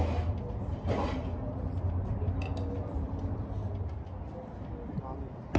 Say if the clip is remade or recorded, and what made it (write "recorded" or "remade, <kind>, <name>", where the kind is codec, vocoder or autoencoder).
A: recorded